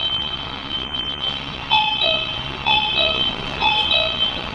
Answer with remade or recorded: remade